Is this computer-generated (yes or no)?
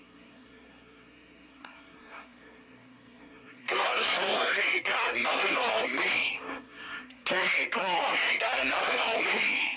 yes